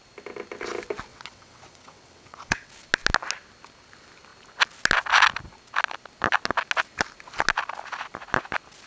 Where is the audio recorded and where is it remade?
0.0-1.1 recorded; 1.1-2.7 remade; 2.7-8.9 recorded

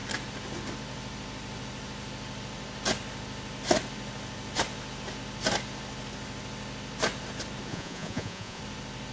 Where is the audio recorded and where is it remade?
0.0-7.7 recorded; 7.7-8.6 remade; 8.6-9.1 recorded

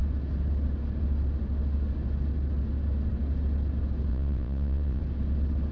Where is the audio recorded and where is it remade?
0.0-4.1 recorded; 4.1-5.0 remade; 5.0-5.7 recorded

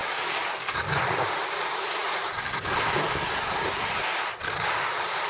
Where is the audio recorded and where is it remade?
0.0-1.0 remade; 1.0-5.3 recorded

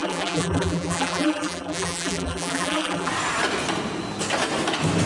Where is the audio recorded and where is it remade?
0.0-3.1 remade; 3.1-5.1 recorded